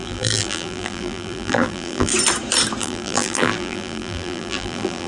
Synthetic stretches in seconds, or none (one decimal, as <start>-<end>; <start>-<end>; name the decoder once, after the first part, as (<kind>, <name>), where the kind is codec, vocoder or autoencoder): 0.0-2.1 (vocoder, BigVGAN v2); 2.8-5.1